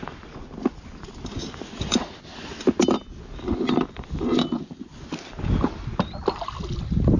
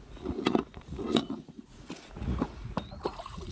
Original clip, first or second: first